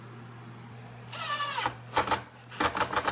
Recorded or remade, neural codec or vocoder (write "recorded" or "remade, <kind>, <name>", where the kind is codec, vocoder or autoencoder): recorded